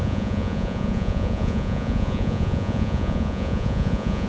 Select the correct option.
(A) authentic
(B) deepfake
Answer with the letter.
B